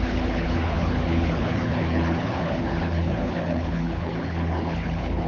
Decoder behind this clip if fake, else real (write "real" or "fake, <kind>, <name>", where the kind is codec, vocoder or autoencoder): fake, codec, HILCodec